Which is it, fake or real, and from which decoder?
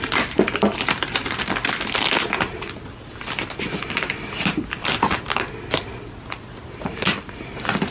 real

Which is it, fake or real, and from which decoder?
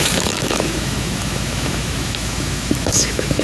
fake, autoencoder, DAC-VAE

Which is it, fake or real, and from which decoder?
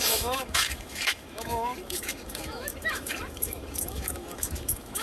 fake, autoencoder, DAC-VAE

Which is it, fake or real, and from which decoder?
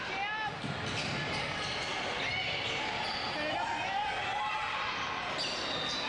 real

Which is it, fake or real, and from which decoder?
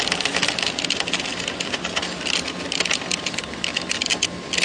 real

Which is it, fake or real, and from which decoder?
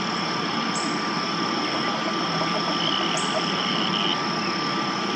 real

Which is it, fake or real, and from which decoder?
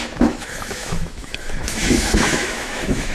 fake, autoencoder, DAC-VAE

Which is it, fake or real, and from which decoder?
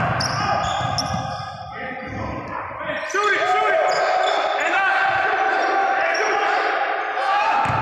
real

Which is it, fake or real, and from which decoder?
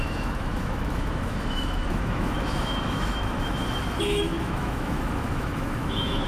fake, autoencoder, DAC-VAE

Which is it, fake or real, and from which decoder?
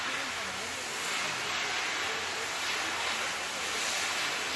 real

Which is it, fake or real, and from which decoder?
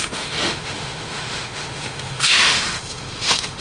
fake, autoencoder, DAC-VAE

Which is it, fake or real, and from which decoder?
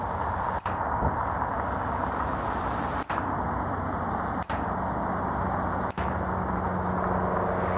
real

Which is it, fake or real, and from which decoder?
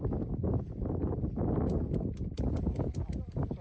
real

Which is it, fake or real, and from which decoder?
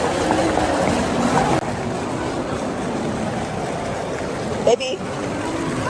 real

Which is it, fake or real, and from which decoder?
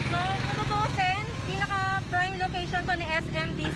fake, autoencoder, DAC-VAE